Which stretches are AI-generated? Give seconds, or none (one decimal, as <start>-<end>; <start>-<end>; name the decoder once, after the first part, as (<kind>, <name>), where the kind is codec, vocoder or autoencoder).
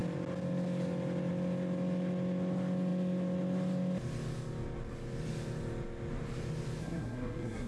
6.8-7.7 (codec, SNAC)